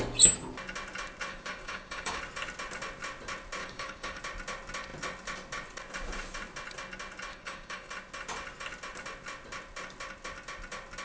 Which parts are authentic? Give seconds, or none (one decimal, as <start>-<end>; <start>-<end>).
0.0-1.3; 2.2-3.6; 4.2-7.3; 7.9-11.0